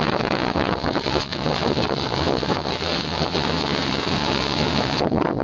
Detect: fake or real fake